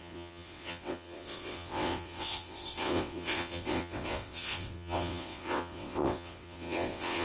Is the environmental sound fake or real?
fake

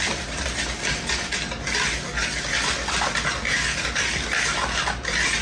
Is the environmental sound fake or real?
real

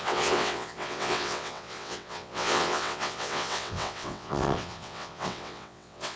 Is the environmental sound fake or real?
fake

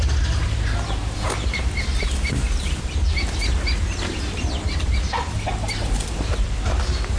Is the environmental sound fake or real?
real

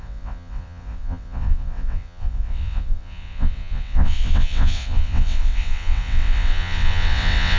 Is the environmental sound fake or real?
fake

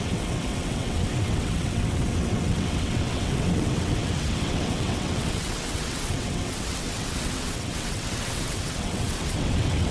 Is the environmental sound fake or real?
fake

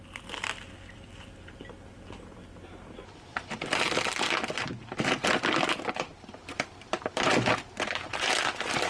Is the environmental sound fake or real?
real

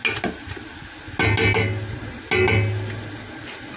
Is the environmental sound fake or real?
real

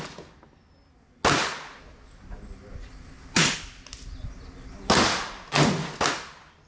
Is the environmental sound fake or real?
real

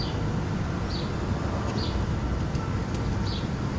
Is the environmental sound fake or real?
real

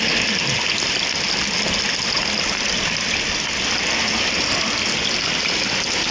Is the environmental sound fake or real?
real